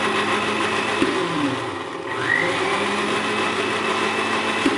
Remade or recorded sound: recorded